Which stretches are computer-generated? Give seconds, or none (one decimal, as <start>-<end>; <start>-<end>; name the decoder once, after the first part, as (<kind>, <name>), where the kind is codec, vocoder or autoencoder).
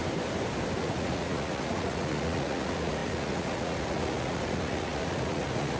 0.8-5.8 (vocoder, Vocos)